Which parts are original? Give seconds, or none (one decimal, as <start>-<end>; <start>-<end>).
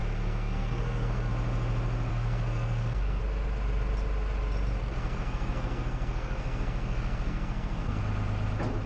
1.3-2.1; 3.2-4.8; 8.0-8.9